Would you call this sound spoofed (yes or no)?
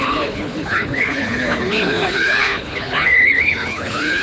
yes